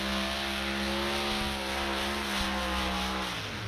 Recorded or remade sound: recorded